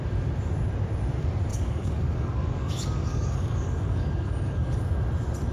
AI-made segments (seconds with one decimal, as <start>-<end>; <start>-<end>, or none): 1.5-4.8

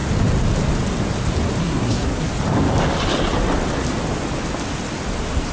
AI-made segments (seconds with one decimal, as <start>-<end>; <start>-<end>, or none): 1.6-2.3

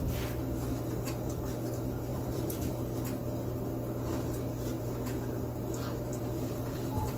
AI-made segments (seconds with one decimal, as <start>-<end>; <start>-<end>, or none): 2.1-2.7; 6.1-7.2

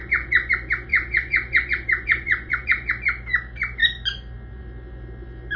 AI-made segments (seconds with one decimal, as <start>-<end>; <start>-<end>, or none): 0.0-0.5; 0.9-2.9

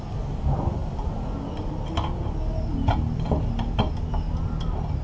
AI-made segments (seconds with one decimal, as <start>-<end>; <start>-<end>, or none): none